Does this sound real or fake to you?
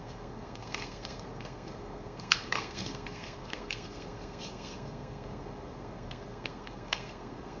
fake